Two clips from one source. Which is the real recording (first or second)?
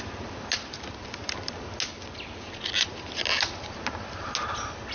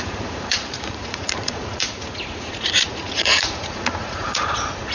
first